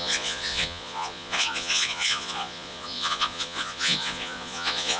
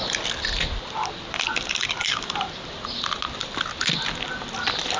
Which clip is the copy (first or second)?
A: first